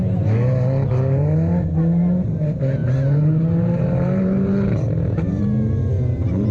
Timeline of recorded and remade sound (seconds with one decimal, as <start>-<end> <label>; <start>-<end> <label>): 0.0-2.8 recorded; 2.8-5.4 remade; 5.4-6.5 recorded